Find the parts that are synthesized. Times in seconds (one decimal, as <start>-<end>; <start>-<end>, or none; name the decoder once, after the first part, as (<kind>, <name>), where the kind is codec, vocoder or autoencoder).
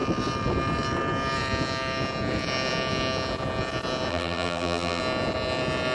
4.1-5.0 (vocoder, BigVGAN v2)